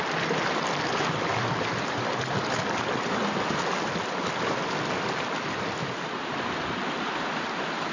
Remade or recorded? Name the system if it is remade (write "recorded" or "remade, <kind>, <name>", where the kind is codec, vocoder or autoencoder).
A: recorded